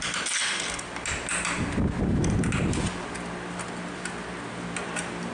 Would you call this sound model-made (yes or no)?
no